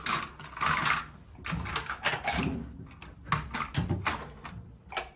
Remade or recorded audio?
recorded